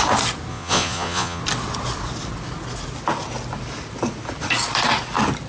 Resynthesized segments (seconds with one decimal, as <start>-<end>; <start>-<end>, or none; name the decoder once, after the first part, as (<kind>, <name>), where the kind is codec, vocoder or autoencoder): 0.5-1.4 (vocoder, Vocos)